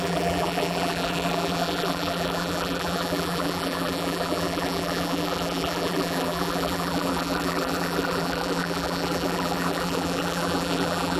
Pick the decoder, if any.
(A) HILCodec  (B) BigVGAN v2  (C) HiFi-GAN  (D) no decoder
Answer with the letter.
B